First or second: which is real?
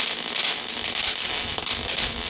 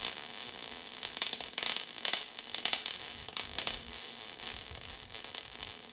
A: first